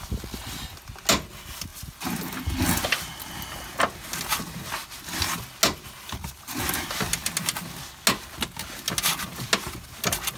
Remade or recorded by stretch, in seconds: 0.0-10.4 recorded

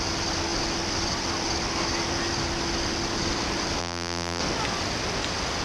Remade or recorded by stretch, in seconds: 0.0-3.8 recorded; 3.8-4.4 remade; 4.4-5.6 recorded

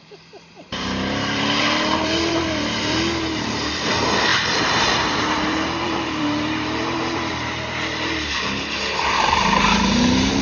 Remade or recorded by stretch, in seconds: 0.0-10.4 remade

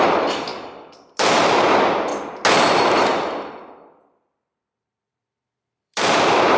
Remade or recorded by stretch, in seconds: 0.0-2.1 remade; 2.1-3.5 recorded; 3.5-6.6 remade

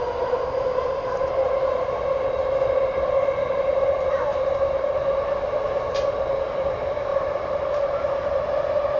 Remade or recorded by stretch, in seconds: 0.0-4.3 recorded; 4.3-5.1 remade; 5.1-7.1 recorded; 7.1-8.5 remade; 8.5-9.0 recorded

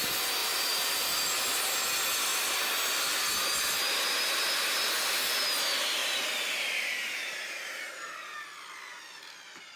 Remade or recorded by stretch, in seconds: 0.0-0.4 recorded; 0.4-1.2 remade; 1.2-6.0 recorded; 6.0-7.9 remade; 7.9-9.8 recorded

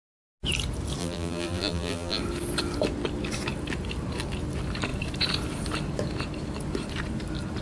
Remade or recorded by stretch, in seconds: 0.0-1.0 recorded; 1.0-2.2 remade; 2.2-7.6 recorded

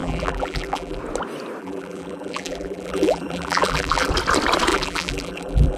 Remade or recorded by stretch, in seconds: 0.0-1.0 remade; 1.0-1.6 recorded; 1.6-4.1 remade; 4.1-4.7 recorded; 4.7-5.8 remade